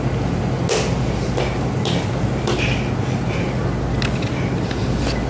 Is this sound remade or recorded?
recorded